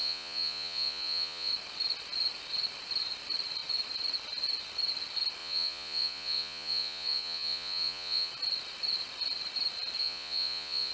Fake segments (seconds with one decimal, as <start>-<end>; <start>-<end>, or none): 0.0-1.5; 5.4-8.3; 10.0-10.9